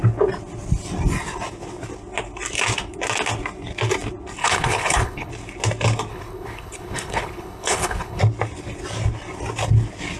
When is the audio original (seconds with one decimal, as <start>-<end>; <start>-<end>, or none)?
0.0-4.4; 5.3-6.1; 8.2-10.2